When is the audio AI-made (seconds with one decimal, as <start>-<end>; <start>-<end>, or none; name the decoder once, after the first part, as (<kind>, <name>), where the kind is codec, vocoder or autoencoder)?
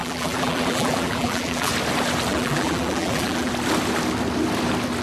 0.0-1.7 (vocoder, BigVGAN v2); 2.3-3.5